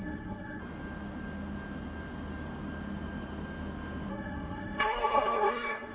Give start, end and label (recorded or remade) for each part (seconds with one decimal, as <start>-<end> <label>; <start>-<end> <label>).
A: 0.0-0.6 remade; 0.6-4.1 recorded; 4.1-5.9 remade